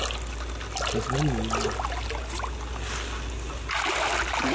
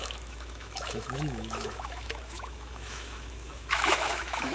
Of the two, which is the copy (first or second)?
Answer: second